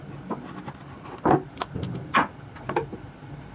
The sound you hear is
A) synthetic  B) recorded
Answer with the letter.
B